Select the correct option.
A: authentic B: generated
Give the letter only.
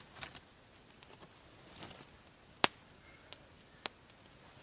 A